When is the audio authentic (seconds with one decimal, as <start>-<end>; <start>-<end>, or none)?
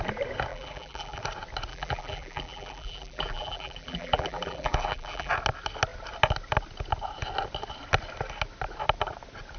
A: 0.0-0.5; 1.2-1.7; 5.3-9.6